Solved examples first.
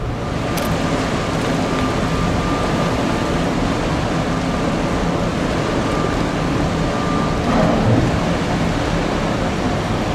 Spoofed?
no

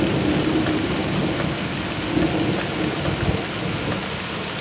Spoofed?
no